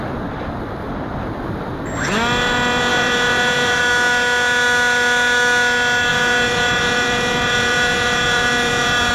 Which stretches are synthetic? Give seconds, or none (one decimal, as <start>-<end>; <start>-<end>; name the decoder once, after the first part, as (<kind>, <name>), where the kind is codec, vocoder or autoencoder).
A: 2.9-3.8 (vocoder, Vocos); 6.1-9.1